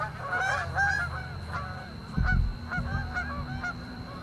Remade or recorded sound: remade